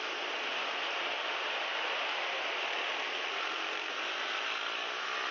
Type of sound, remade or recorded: recorded